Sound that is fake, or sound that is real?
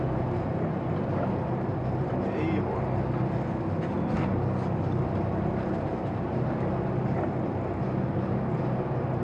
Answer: real